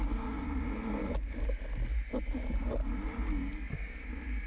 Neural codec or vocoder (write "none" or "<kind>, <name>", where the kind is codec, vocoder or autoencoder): none